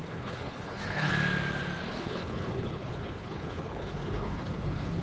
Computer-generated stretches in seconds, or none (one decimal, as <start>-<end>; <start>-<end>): 0.0-1.1; 1.9-5.0